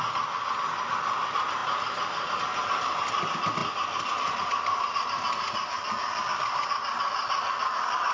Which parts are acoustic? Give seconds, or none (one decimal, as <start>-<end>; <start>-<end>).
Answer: 0.0-8.1